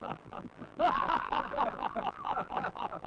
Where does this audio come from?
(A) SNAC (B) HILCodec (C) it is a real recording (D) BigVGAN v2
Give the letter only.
D